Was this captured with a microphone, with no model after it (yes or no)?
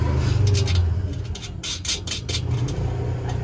yes